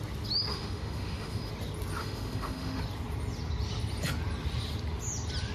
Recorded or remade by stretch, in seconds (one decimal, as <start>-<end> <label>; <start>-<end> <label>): 0.0-0.5 recorded; 0.5-1.5 remade; 1.5-2.0 recorded; 2.0-2.8 remade; 2.8-5.5 recorded